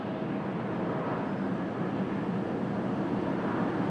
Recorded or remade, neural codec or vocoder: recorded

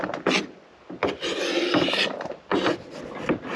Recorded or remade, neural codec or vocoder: recorded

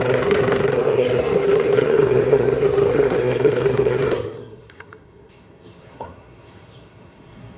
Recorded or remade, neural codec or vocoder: remade, codec, SNAC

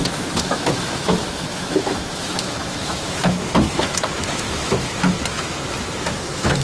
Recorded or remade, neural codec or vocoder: remade, autoencoder, DAC-VAE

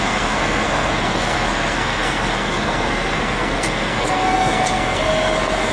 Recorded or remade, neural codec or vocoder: remade, codec, SNAC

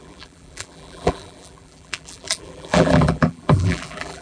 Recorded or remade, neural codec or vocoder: remade, vocoder, BigVGAN v2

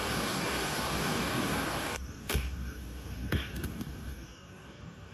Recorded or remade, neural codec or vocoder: remade, codec, DAC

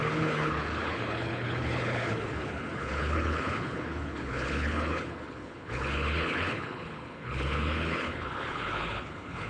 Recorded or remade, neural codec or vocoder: remade, codec, HILCodec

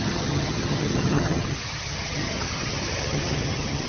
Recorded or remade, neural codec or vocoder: remade, vocoder, HiFi-GAN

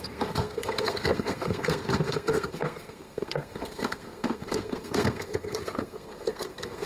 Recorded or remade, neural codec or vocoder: remade, codec, SNAC